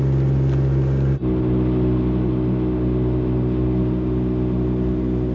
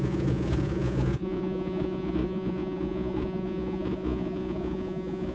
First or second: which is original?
first